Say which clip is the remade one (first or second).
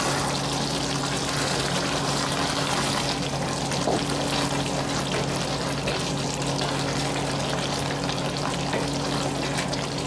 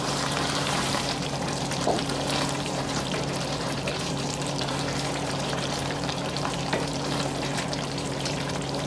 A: second